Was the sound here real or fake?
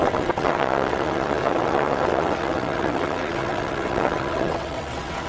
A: fake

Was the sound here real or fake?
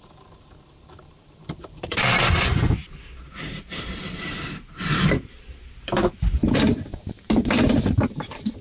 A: fake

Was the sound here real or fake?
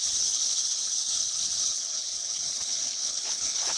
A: fake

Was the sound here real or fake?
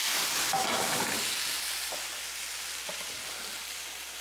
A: real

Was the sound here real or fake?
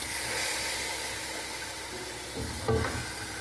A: real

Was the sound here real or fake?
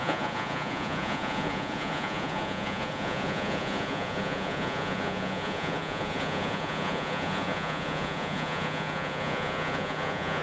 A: fake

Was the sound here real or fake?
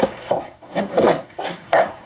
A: fake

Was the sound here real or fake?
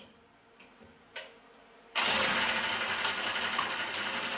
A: real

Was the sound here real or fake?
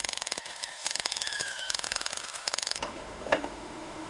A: fake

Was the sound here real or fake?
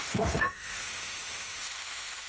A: fake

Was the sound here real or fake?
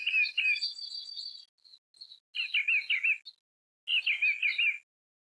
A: real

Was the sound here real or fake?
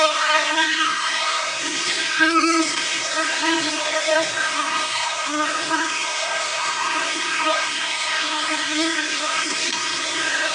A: fake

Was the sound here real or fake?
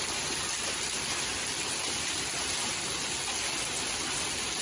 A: real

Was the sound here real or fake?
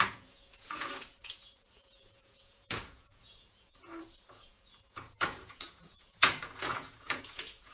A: fake